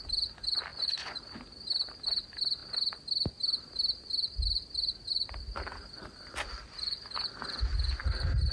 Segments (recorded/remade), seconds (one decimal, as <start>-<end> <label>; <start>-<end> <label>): 0.0-0.7 recorded; 0.7-1.2 remade; 1.2-8.5 recorded